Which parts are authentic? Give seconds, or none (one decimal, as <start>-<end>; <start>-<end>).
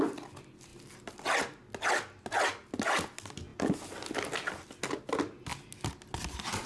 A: 0.0-6.7